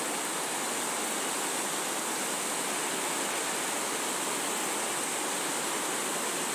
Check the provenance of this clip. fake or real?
real